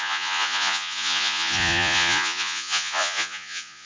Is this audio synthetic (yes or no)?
yes